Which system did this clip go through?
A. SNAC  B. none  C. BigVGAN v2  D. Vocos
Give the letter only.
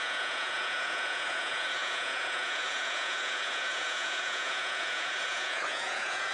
D